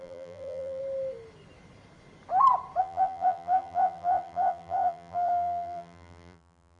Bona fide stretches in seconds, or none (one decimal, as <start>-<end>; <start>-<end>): 0.8-2.8